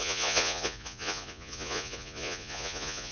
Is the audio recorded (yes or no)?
no